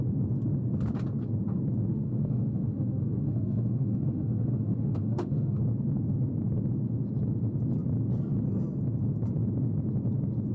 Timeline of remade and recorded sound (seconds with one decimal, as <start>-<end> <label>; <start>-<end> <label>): 0.0-1.9 recorded; 1.9-5.6 remade; 5.6-10.5 recorded